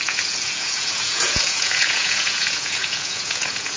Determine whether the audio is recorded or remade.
remade